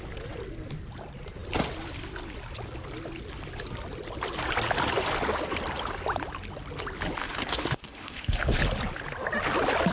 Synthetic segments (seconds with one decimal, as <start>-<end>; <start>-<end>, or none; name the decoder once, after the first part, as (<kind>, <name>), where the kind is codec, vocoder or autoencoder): 7.2-8.6 (autoencoder, DAC-VAE)